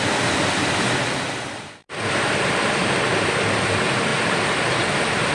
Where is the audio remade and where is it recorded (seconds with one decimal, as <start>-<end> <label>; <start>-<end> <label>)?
0.0-1.8 recorded; 1.8-2.5 remade; 2.5-4.1 recorded; 4.1-5.3 remade